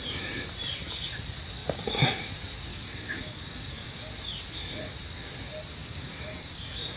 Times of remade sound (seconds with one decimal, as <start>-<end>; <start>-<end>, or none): 2.7-4.1; 5.8-7.0